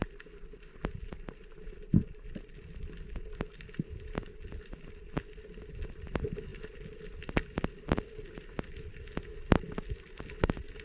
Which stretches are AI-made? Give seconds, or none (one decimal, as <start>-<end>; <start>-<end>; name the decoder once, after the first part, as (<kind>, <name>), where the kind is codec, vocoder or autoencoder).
none